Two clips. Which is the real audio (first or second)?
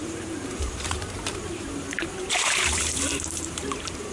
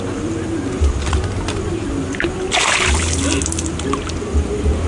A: second